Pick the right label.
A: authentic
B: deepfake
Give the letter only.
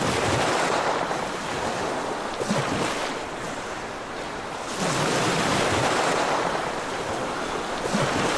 A